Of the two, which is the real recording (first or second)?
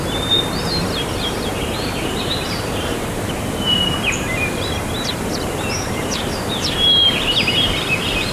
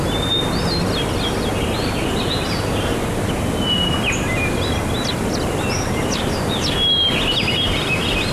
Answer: second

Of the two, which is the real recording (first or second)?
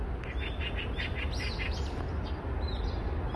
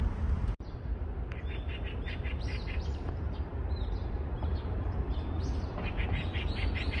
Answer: first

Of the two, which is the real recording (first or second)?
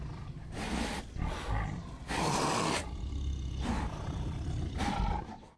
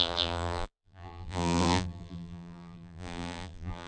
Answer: first